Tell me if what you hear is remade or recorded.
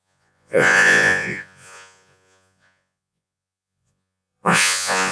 remade